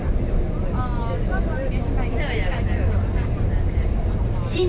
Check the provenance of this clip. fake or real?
real